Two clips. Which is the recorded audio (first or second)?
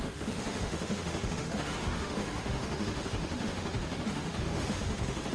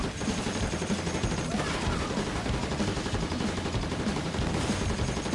second